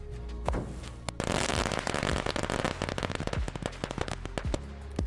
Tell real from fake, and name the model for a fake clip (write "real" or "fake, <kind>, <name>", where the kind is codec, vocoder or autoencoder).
real